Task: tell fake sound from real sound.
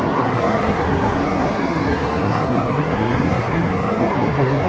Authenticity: fake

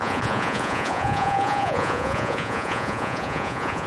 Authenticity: fake